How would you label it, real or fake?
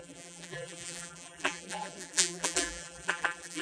fake